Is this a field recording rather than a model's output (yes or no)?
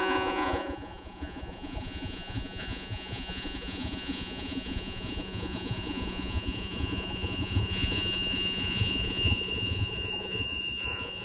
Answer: no